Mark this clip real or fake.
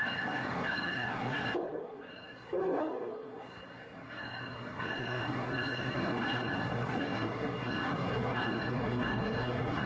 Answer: fake